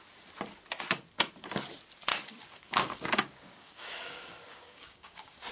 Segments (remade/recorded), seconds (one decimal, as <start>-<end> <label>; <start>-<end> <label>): 0.0-2.1 recorded; 2.1-5.5 remade